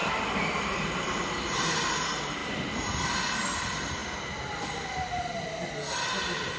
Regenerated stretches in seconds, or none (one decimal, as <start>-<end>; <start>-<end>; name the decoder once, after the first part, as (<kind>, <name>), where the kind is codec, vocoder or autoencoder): 0.0-1.9 (vocoder, BigVGAN v2)